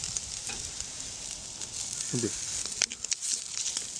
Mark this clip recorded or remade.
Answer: recorded